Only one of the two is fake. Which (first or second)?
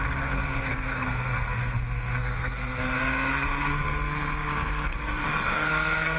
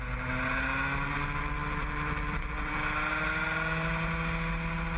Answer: first